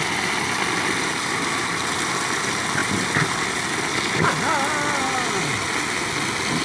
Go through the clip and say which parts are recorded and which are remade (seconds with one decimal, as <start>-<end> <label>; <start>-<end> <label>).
0.0-6.6 recorded